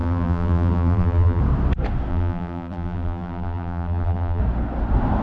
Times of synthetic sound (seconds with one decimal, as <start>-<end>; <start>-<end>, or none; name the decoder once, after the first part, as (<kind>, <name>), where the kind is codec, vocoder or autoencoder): 0.0-1.4 (vocoder, BigVGAN v2); 2.1-4.4